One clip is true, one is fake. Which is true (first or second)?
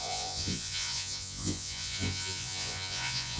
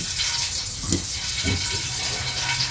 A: second